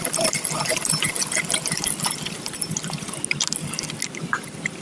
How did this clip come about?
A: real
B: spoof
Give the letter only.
A